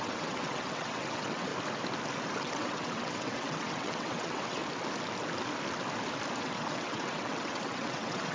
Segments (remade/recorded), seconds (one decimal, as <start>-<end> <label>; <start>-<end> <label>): 0.0-1.5 remade; 1.5-2.3 recorded; 2.3-4.6 remade; 4.6-6.4 recorded; 6.4-8.3 remade